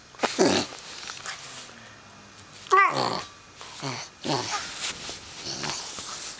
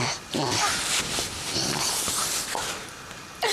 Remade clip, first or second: second